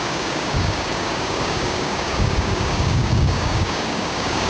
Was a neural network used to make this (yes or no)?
yes